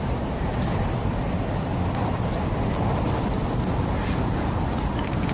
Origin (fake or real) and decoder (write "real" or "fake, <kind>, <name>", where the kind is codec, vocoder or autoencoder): real